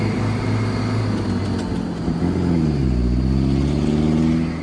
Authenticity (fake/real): real